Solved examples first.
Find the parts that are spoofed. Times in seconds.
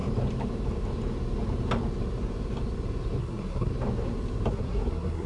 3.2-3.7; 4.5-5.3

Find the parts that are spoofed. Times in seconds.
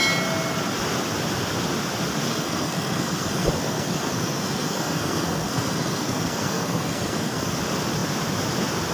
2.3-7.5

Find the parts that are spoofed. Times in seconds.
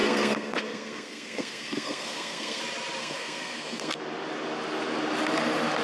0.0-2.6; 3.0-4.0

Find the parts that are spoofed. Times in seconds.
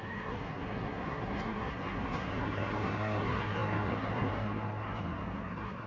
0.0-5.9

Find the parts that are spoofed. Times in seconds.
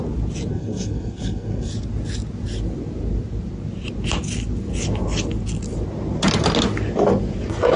0.5-1.7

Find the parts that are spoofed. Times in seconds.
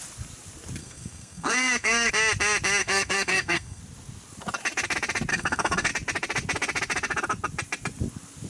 0.8-2.1; 2.8-3.8; 5.3-5.9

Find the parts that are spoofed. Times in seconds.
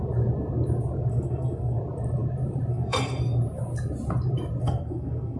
1.1-1.8; 2.7-3.4; 4.6-5.4